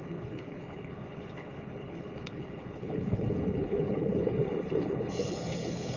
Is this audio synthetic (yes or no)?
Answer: yes